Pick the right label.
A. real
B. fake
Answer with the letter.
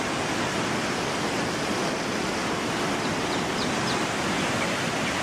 A